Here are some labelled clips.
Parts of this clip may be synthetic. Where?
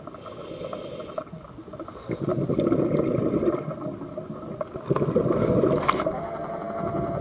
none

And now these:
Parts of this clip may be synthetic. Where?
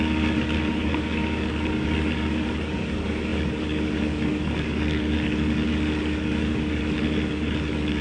0.0-8.0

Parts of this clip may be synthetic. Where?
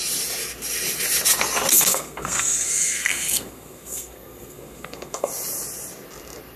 1.7-5.3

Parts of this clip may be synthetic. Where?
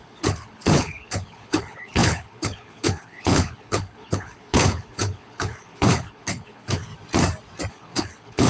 0.0-6.9; 7.7-8.5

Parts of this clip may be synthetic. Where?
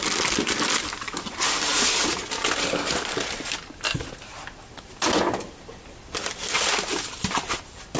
none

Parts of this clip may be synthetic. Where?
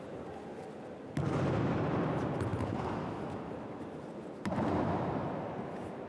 none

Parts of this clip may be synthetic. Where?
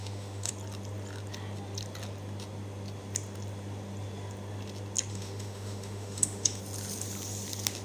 0.0-0.5; 5.1-6.6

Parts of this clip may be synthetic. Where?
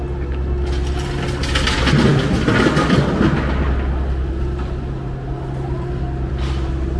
none